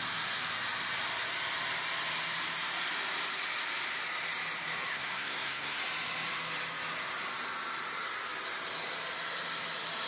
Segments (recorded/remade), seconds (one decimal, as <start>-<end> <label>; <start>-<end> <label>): 0.0-4.9 recorded; 4.9-5.8 remade; 5.8-10.1 recorded